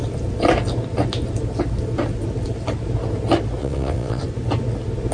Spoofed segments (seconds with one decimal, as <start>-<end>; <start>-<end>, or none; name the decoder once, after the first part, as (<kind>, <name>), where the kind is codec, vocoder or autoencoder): 3.6-4.2 (vocoder, WaveNeXt)